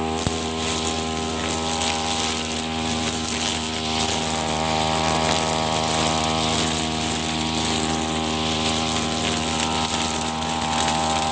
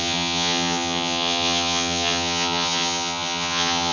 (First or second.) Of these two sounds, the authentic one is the first